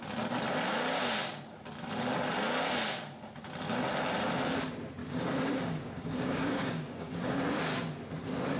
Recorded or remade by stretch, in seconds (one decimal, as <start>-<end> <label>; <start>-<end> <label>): 0.0-5.0 recorded; 5.0-7.4 remade; 7.4-8.6 recorded